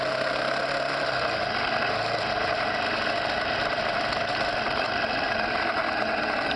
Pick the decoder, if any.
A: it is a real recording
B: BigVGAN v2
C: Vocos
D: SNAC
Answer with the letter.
A